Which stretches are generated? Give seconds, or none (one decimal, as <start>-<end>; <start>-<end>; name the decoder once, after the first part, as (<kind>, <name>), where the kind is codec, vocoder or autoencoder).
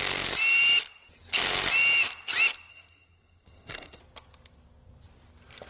2.7-4.0 (codec, SNAC)